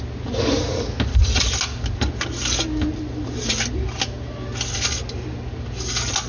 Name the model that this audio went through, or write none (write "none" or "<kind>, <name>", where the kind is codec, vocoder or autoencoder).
none